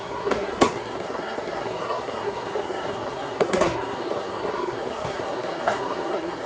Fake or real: fake